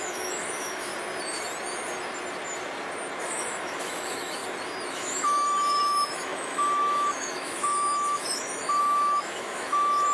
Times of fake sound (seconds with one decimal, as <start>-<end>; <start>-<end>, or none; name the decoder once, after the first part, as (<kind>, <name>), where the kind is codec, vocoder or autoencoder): 0.0-0.9 (autoencoder, DAC-VAE); 3.2-4.4; 4.9-10.1